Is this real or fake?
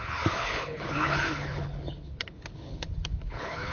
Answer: fake